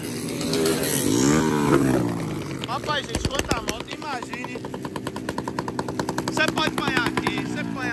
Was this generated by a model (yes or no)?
no